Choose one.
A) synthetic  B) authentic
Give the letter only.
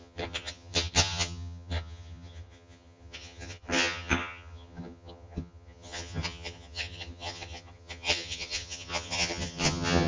A